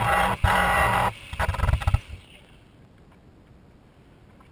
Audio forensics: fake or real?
real